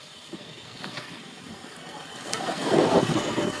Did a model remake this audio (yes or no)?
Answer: yes